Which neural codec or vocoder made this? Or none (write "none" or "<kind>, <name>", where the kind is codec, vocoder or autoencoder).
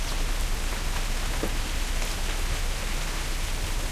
none